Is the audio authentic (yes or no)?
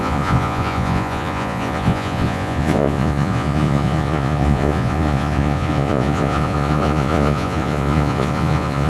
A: no